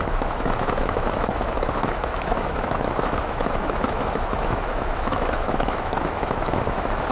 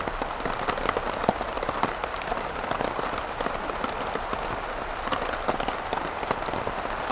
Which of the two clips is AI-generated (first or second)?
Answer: first